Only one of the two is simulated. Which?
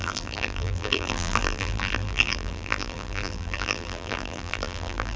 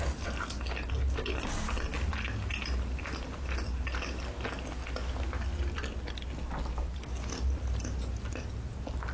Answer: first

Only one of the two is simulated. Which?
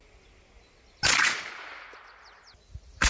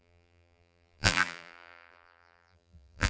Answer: second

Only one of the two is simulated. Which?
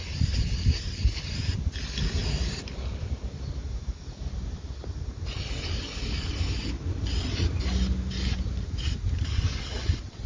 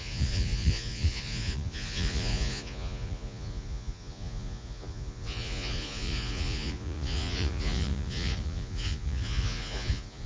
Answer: second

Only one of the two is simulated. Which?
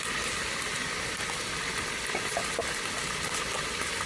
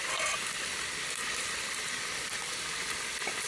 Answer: second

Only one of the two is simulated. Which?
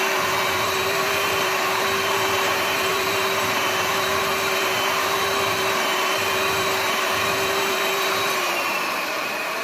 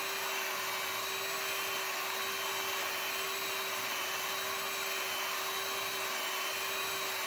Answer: first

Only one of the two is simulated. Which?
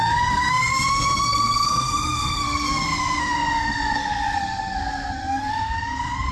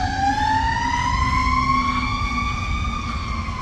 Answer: first